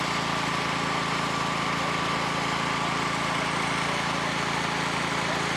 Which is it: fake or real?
real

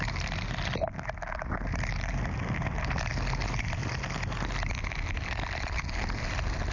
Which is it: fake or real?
real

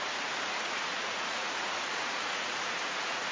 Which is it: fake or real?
fake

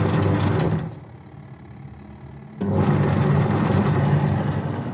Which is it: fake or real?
real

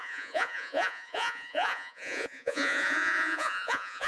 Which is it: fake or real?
fake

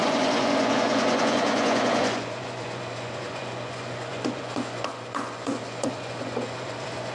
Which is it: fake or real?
fake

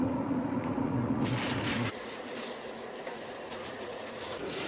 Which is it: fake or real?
fake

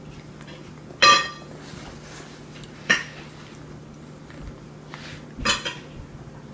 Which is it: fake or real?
real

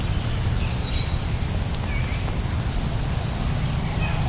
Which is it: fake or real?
real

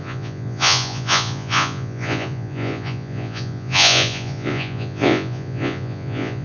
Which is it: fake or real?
fake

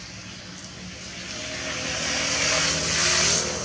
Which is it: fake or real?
real